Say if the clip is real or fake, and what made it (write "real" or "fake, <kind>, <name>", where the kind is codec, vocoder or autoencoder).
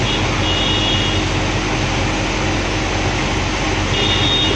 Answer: real